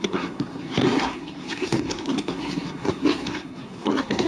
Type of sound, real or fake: fake